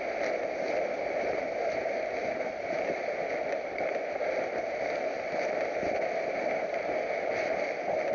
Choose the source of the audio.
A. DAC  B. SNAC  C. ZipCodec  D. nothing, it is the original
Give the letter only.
D